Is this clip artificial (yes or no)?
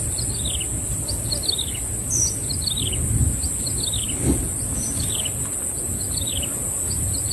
no